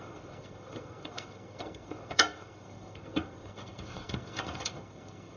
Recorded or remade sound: remade